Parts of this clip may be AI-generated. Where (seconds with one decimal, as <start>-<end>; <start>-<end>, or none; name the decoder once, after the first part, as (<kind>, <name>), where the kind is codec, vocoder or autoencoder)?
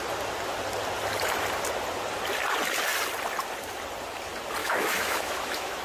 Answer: 4.6-5.8 (autoencoder, DAC-VAE)